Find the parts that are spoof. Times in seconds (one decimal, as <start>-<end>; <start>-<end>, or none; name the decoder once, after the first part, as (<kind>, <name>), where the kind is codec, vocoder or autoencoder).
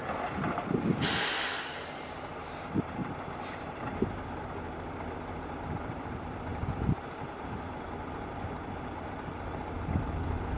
3.0-4.2 (vocoder, BigVGAN v2); 6.5-7.9